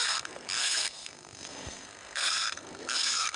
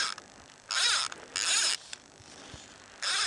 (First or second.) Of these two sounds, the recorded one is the second